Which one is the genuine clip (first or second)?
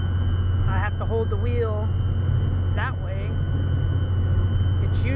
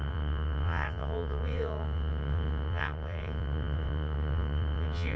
first